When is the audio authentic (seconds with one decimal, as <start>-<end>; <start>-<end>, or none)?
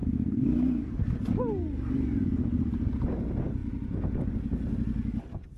0.9-5.6